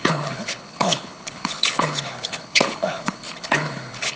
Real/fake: fake